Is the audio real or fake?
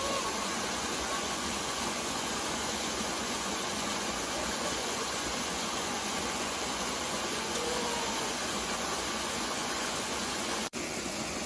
fake